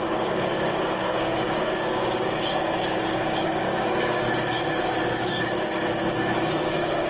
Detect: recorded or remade remade